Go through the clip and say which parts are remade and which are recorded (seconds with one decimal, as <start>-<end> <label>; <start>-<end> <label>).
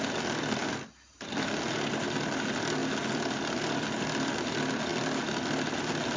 0.0-6.2 recorded